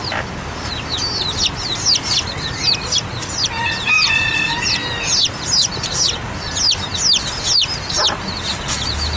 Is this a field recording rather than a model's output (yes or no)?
yes